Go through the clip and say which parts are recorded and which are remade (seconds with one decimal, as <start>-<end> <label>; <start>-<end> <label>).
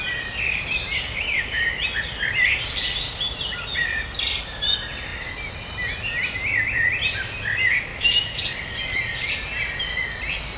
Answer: 0.0-7.9 recorded; 7.9-8.4 remade; 8.4-10.6 recorded